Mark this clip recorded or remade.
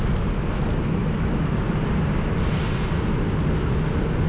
recorded